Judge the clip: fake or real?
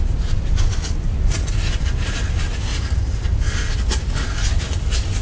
real